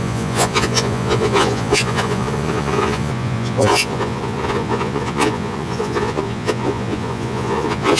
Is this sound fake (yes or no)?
yes